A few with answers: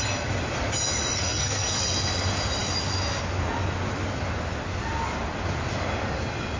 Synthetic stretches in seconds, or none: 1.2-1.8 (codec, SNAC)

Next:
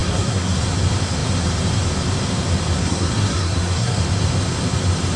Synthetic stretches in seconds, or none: 0.0-0.6 (codec, SNAC); 2.8-4.0

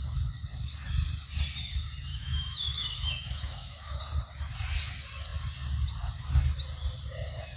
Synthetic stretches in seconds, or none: 2.1-4.0 (autoencoder, DAC-VAE)

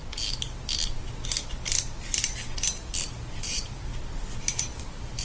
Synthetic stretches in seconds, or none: 3.1-3.9 (vocoder, BigVGAN v2)

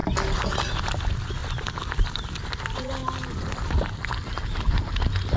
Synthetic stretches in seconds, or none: 1.4-2.2 (vocoder, BigVGAN v2)

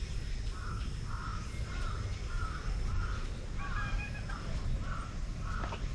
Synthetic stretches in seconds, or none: none